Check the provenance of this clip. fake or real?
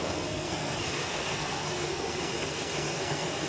fake